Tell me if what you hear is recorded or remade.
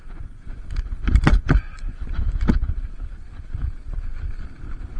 recorded